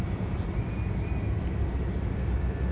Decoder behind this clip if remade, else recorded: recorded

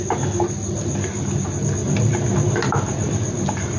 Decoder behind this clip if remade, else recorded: recorded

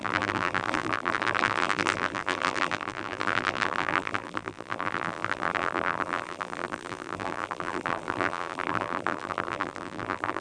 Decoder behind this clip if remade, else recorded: remade, vocoder, BigVGAN v2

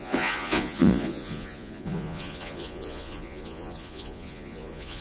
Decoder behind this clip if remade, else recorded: remade, vocoder, Vocos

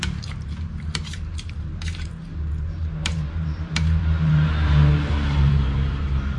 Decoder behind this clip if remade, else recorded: remade, vocoder, BigVGAN v2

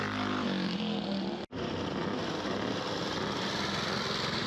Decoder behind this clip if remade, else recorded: recorded